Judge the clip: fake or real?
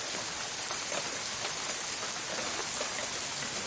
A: real